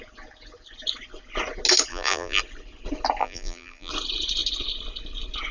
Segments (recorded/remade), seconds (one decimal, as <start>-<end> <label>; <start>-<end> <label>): 0.0-1.9 recorded; 1.9-2.4 remade; 2.4-3.2 recorded; 3.2-3.9 remade; 3.9-5.5 recorded

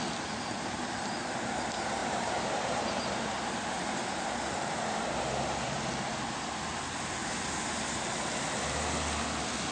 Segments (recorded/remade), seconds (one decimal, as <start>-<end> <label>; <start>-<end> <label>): 0.0-2.0 recorded; 2.0-5.9 remade; 5.9-7.2 recorded; 7.2-8.0 remade; 8.0-9.7 recorded

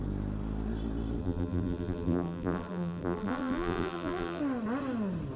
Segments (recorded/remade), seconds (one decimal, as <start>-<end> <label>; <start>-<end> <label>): 0.0-1.2 recorded; 1.2-4.4 remade; 4.4-5.4 recorded

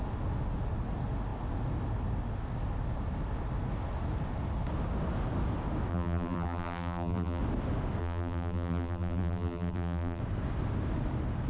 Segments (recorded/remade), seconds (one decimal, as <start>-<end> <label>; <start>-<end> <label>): 0.0-5.9 recorded; 5.9-7.4 remade; 7.4-8.0 recorded; 8.0-10.2 remade; 10.2-11.5 recorded

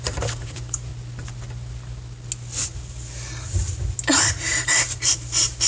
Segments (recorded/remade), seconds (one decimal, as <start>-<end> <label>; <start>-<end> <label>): 0.0-0.9 remade; 0.9-4.3 recorded; 4.3-5.7 remade